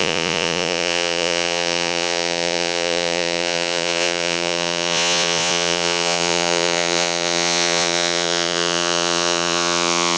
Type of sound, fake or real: fake